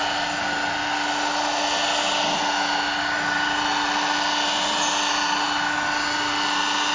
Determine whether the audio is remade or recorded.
recorded